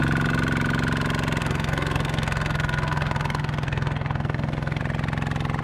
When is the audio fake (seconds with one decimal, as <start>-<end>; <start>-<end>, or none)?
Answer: 1.4-4.8